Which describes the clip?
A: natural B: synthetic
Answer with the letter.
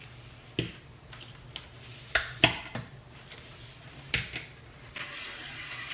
A